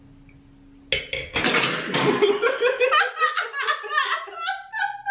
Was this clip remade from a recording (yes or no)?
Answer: no